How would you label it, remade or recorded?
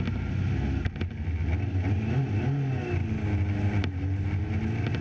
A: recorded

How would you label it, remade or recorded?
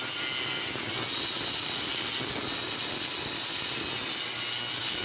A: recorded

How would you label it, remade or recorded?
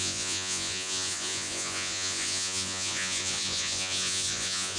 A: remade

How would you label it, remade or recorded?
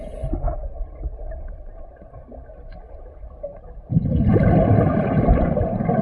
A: remade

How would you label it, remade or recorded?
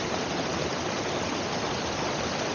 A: recorded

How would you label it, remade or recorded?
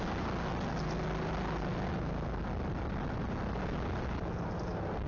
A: recorded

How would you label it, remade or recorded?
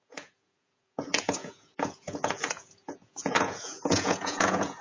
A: remade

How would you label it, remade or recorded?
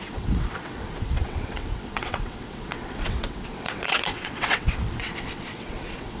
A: remade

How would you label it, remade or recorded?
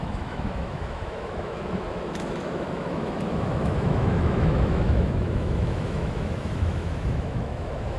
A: remade